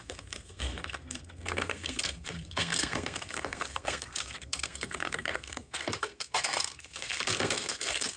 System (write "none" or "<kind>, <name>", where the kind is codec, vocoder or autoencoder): codec, SNAC